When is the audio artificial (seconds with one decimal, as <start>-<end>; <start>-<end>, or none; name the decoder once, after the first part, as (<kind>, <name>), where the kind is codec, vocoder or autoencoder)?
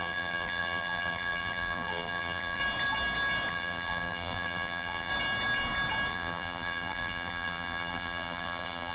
0.0-2.6 (vocoder, BigVGAN v2); 3.5-5.1; 6.1-8.9